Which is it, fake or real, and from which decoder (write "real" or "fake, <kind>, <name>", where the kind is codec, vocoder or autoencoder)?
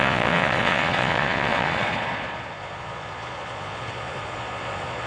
fake, vocoder, Vocos